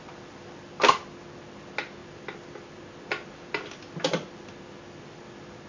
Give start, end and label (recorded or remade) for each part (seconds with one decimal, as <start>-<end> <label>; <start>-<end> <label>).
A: 0.0-5.7 recorded